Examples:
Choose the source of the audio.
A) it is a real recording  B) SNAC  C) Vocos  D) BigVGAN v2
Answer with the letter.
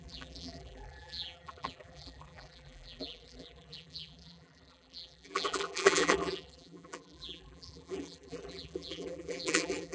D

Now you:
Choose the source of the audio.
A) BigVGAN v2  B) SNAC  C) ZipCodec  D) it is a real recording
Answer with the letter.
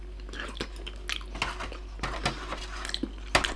D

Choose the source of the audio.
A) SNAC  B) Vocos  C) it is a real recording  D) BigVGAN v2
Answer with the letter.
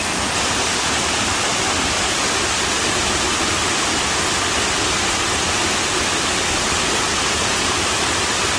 C